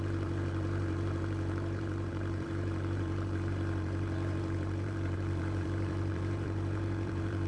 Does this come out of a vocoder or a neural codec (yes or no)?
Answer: yes